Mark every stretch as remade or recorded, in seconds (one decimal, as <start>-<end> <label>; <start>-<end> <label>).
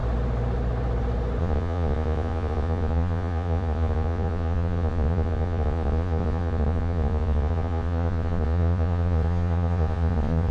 0.0-1.4 recorded; 1.4-10.5 remade